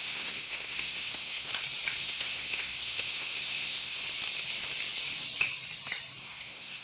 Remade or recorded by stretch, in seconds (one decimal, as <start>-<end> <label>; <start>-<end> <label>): 0.0-1.5 remade; 1.5-2.0 recorded; 2.0-4.0 remade; 4.0-6.2 recorded; 6.2-6.8 remade